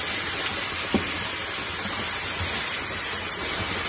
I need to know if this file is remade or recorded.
recorded